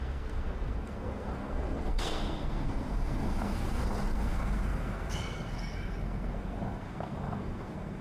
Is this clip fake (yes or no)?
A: yes